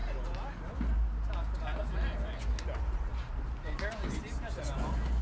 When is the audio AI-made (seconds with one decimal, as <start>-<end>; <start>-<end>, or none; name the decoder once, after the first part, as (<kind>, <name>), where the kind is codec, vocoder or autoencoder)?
none